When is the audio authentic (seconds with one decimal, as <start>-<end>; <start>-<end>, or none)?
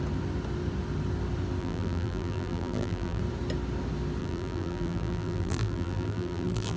0.0-1.6; 3.2-4.2